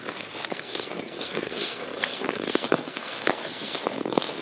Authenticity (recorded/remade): remade